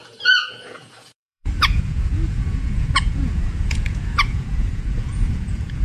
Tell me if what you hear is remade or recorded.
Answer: remade